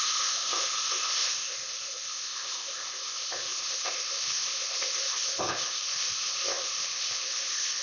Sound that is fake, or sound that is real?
fake